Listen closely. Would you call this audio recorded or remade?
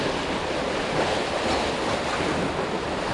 recorded